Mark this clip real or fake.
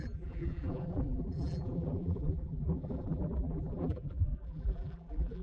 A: fake